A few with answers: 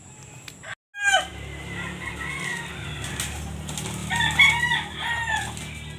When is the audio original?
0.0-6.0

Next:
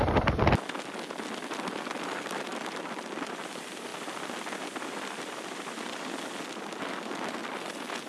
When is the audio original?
3.9-5.3

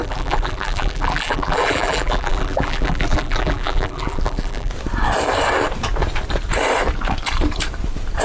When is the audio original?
4.7-8.2

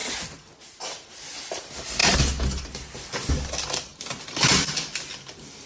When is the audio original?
0.0-5.7

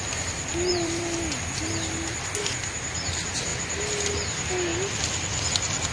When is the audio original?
0.0-0.7; 2.5-5.9

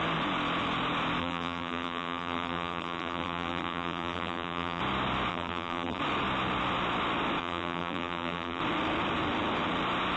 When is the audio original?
0.0-1.2; 4.8-5.3; 6.0-7.4; 8.6-10.2

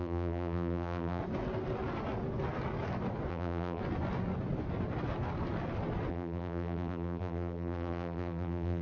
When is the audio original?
1.2-3.3; 3.8-6.1

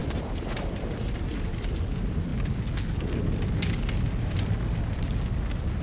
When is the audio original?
2.3-5.8